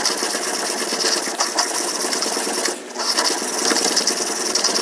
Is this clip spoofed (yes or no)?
no